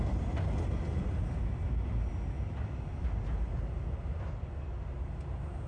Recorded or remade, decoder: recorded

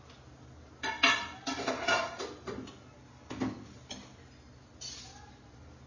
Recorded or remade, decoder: recorded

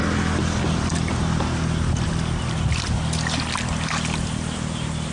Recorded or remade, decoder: recorded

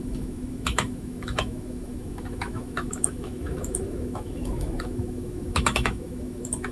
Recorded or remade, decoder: remade, autoencoder, DAC-VAE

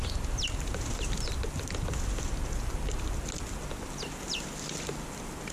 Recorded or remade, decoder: recorded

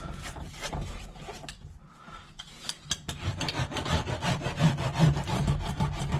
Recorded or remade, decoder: recorded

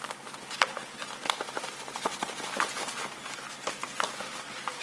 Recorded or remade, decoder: recorded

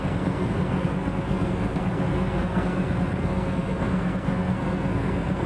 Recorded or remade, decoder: remade, codec, SNAC